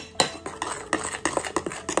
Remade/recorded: recorded